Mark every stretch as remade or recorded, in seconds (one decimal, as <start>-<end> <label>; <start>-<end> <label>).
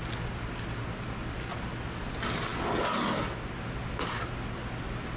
0.0-5.2 recorded